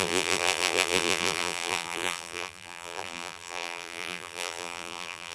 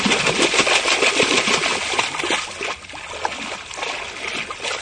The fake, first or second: first